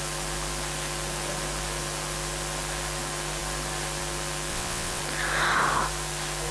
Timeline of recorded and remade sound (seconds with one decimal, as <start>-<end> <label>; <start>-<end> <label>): 0.0-4.5 recorded; 4.5-5.0 remade; 5.0-6.5 recorded